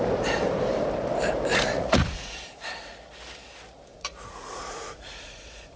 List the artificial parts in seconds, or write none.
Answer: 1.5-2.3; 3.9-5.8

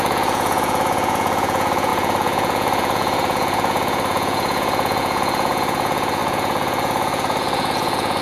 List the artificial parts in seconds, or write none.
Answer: 0.0-8.2